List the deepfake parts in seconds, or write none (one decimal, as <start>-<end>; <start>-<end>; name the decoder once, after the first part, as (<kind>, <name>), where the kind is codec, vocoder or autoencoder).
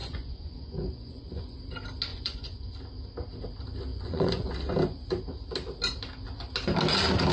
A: 0.0-1.6 (vocoder, Vocos); 2.1-2.7; 3.9-4.5